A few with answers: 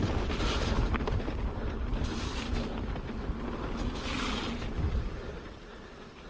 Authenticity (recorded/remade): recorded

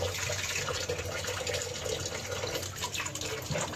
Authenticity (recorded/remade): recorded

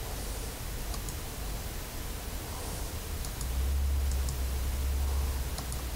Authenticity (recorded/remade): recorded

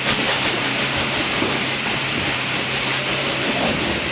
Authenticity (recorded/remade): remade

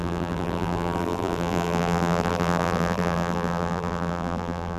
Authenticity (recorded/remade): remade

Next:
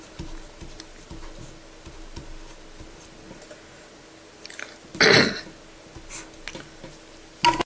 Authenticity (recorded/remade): recorded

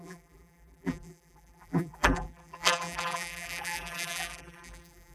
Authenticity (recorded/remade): remade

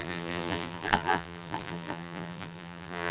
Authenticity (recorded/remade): remade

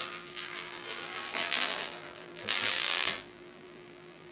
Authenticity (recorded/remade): remade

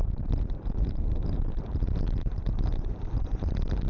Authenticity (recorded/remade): remade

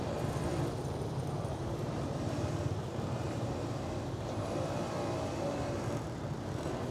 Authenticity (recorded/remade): remade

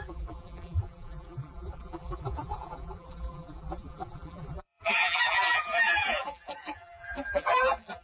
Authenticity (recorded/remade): remade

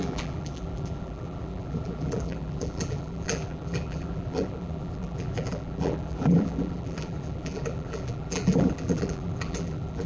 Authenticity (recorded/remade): remade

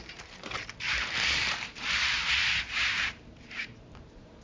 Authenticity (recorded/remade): remade